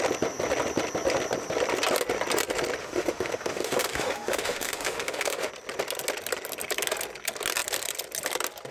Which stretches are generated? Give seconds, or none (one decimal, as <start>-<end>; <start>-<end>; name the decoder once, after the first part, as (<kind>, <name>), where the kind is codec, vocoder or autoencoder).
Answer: 2.8-5.5 (autoencoder, DAC-VAE)